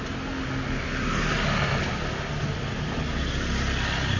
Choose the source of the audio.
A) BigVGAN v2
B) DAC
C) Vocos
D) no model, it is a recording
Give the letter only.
D